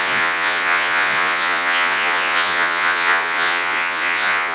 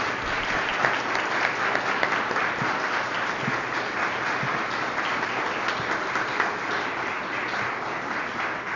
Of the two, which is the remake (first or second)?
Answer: first